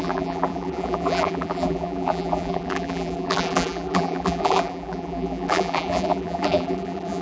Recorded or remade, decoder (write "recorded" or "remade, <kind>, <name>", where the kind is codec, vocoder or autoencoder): remade, vocoder, BigVGAN v2